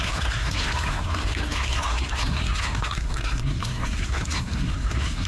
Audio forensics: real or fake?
fake